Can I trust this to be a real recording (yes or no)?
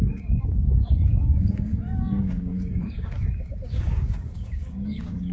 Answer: no